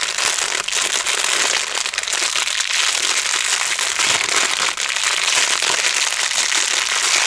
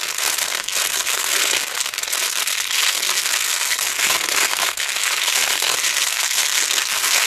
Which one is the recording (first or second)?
first